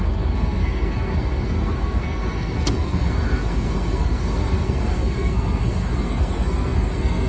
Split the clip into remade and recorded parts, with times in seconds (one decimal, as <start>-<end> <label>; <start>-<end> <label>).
0.0-7.3 remade